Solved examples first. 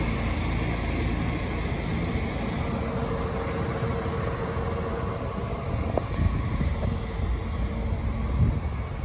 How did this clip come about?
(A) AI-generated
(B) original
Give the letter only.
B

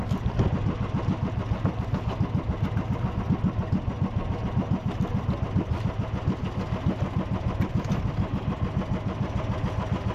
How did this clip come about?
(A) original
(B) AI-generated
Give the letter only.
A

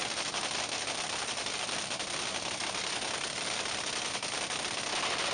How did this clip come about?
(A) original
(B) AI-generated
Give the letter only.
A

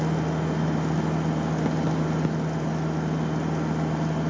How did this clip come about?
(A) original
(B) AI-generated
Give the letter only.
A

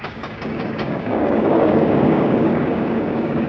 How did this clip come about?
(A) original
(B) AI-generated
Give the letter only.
B